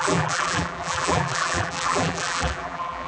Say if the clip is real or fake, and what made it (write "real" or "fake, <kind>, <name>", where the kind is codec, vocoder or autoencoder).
fake, vocoder, BigVGAN v2